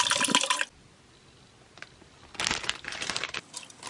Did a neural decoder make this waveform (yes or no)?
no